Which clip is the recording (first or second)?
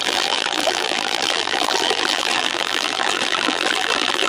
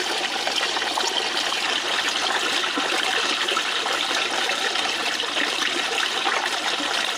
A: second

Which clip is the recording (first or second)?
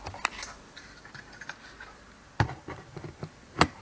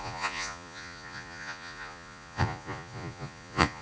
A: first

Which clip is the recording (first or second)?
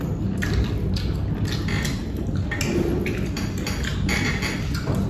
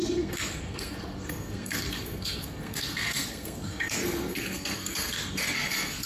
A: first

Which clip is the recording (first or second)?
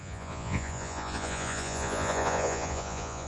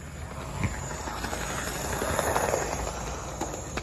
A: second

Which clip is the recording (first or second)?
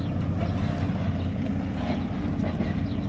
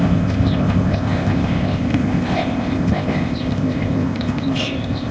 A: first